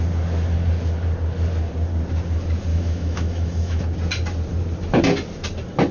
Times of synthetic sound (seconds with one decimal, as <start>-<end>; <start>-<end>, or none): 2.7-3.8